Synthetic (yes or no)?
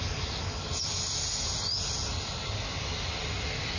no